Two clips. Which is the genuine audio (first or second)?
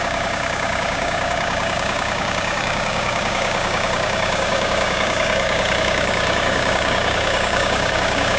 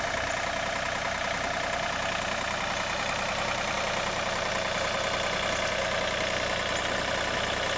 second